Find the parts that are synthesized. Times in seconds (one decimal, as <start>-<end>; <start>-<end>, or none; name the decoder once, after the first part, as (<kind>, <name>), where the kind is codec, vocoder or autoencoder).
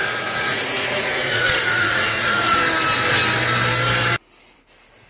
0.0-2.6 (vocoder, Vocos)